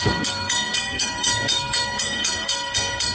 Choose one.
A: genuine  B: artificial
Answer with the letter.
B